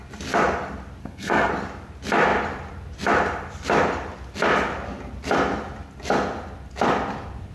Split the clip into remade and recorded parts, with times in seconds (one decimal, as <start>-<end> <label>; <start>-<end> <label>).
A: 0.0-1.0 recorded; 1.0-1.5 remade; 1.5-7.5 recorded